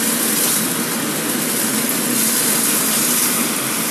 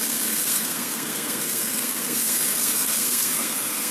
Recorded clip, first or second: first